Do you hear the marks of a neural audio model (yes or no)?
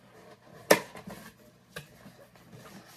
no